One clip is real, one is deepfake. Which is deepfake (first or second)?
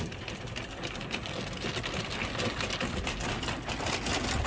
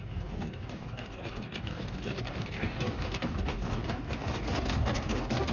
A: second